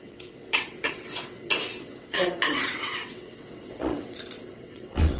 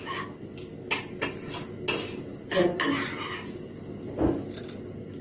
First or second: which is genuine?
second